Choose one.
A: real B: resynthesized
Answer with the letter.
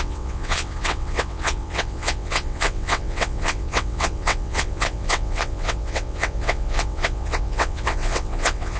B